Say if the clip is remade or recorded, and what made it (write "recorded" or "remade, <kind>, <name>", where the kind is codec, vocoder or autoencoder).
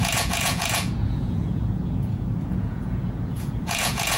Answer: remade, vocoder, Vocos